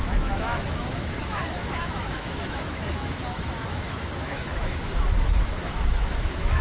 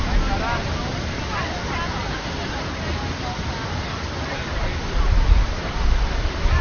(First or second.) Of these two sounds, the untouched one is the second